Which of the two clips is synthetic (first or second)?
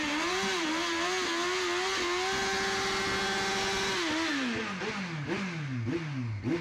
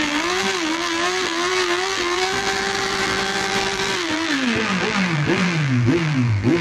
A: second